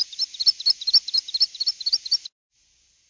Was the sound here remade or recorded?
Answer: recorded